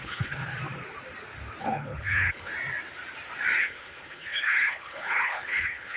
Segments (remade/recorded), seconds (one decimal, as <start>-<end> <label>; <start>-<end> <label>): 0.0-0.5 remade; 0.5-1.6 recorded; 1.6-2.5 remade; 2.5-3.6 recorded; 3.6-6.0 remade